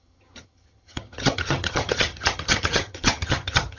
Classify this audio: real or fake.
fake